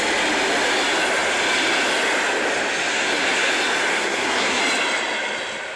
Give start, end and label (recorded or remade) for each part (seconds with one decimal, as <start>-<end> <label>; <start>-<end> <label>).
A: 0.0-2.9 recorded; 2.9-3.5 remade; 3.5-3.9 recorded; 3.9-4.6 remade; 4.6-5.8 recorded